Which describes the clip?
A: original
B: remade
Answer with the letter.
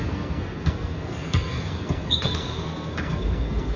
B